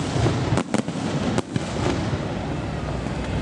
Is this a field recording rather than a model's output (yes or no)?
yes